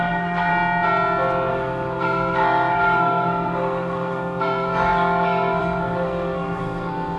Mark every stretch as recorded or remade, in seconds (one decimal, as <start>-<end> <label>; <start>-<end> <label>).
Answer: 0.0-0.5 remade; 0.5-1.5 recorded; 1.5-7.2 remade

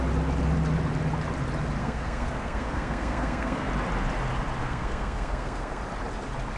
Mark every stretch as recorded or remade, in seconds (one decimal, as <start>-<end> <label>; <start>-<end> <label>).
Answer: 0.0-1.8 recorded; 1.8-3.7 remade; 3.7-4.6 recorded; 4.6-5.8 remade; 5.8-6.6 recorded

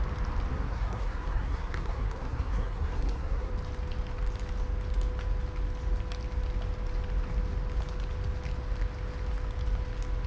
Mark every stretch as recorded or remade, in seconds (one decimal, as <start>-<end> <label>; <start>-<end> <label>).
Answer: 0.0-0.5 recorded; 0.5-3.5 remade; 3.5-10.3 recorded

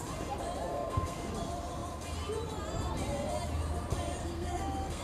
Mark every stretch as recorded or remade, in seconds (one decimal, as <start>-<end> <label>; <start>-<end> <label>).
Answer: 0.0-0.7 recorded; 0.7-1.3 remade; 1.3-4.2 recorded; 4.2-5.0 remade